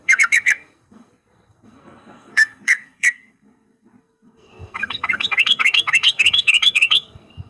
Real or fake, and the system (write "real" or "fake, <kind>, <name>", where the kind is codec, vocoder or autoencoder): fake, codec, SNAC